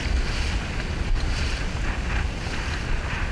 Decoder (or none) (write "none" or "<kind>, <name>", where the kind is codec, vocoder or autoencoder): none